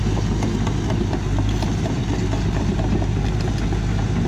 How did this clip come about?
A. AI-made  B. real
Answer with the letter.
B